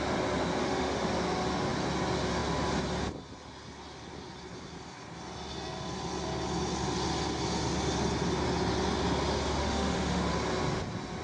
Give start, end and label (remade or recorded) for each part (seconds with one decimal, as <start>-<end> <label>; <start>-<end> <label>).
0.0-0.6 recorded; 0.6-1.1 remade; 1.1-9.6 recorded; 9.6-10.2 remade; 10.2-11.2 recorded